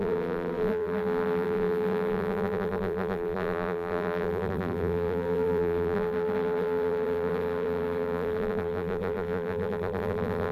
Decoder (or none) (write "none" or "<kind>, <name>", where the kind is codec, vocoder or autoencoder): vocoder, BigVGAN v2